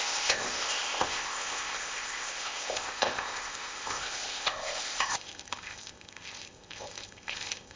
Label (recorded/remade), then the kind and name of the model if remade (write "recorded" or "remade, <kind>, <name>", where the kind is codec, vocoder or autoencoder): remade, codec, ZipCodec